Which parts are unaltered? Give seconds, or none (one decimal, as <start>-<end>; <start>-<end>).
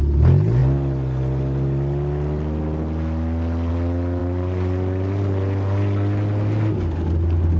0.0-7.6